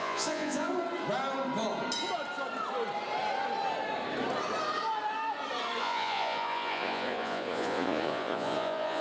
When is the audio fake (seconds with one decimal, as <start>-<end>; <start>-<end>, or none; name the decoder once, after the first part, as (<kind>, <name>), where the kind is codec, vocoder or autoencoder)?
0.0-0.7 (vocoder, Vocos); 5.8-9.0